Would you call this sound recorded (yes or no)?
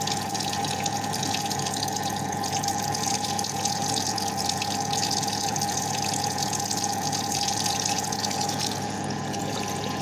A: no